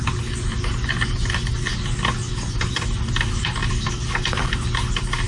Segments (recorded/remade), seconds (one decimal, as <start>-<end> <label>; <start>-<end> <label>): 0.0-5.3 recorded